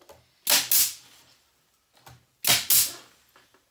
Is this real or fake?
real